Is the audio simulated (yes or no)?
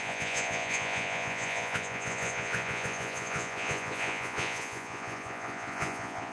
yes